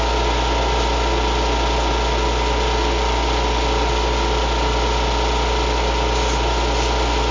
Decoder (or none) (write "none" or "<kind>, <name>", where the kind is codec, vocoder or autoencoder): none